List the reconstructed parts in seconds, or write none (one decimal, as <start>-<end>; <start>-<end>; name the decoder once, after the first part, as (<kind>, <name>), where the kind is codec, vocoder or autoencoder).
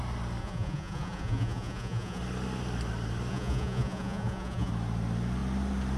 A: 0.4-2.2 (vocoder, Vocos); 3.3-4.7